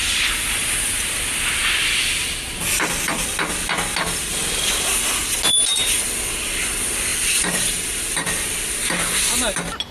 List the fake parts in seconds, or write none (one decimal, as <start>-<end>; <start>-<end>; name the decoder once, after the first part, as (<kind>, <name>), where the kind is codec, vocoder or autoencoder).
7.1-9.4 (vocoder, BigVGAN v2)